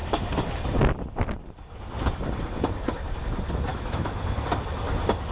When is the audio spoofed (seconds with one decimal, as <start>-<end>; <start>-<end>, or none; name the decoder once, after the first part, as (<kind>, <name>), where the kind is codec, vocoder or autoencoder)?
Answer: 3.7-4.2 (autoencoder, DAC-VAE)

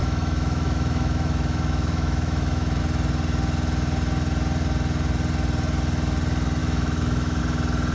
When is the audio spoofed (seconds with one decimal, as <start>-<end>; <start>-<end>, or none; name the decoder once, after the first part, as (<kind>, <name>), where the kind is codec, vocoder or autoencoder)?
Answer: 0.0-2.8 (autoencoder, DAC-VAE); 6.6-7.4

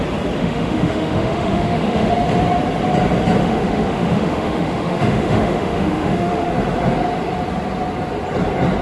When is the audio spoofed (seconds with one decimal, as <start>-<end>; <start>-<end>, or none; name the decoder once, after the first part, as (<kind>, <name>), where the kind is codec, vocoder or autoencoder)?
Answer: 0.4-2.1 (autoencoder, DAC-VAE); 3.4-6.5

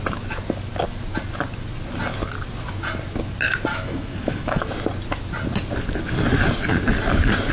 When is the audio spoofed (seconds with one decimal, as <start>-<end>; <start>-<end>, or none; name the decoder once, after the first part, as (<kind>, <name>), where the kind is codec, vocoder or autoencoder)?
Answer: 3.7-4.6 (autoencoder, DAC-VAE)

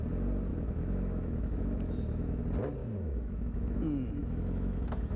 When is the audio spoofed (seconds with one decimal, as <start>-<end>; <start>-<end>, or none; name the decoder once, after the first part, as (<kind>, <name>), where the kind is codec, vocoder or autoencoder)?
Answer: 0.5-2.4 (autoencoder, DAC-VAE); 2.8-3.8; 4.2-5.2